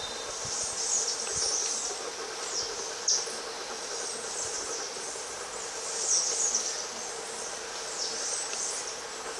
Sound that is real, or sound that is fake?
real